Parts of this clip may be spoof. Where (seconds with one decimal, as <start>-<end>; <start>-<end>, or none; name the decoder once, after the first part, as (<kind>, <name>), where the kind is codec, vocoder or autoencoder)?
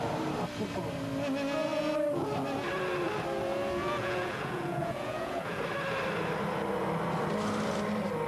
3.8-5.6 (vocoder, Vocos)